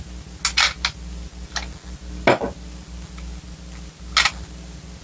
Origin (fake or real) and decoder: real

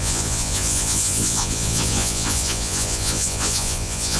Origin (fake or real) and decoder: fake, vocoder, Vocos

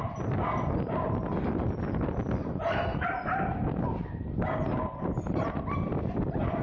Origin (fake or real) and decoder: real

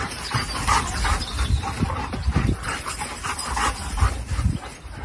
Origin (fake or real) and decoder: real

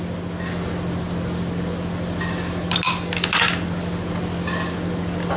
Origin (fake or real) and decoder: real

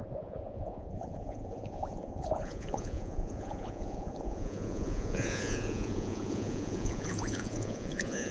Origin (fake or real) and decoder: fake, vocoder, Vocos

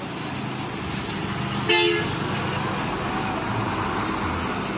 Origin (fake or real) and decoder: real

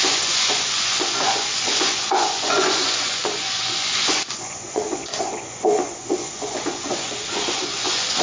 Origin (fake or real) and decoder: fake, vocoder, Vocos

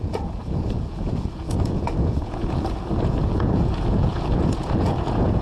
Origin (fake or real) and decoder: fake, vocoder, Vocos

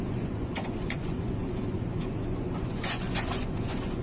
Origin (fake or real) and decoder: fake, vocoder, Vocos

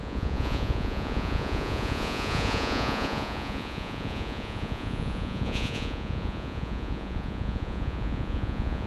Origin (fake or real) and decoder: fake, vocoder, Vocos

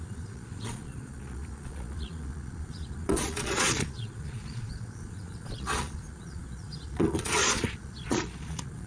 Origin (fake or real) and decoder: fake, vocoder, Vocos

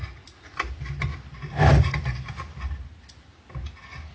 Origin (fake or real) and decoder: real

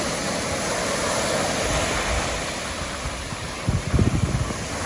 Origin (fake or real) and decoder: real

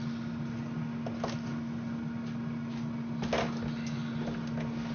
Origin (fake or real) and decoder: real